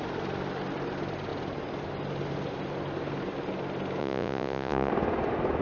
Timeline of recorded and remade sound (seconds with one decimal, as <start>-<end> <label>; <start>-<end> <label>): 0.0-4.0 recorded; 4.0-4.9 remade; 4.9-5.6 recorded